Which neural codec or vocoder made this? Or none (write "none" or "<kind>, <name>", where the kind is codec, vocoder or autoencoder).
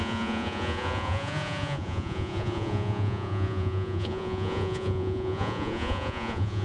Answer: vocoder, Vocos